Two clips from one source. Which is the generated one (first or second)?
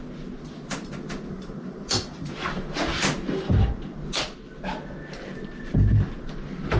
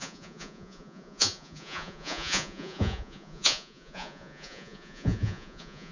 second